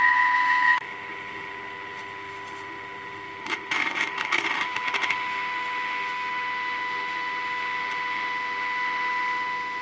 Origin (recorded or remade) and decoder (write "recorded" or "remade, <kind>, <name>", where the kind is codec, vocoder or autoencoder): remade, autoencoder, DAC-VAE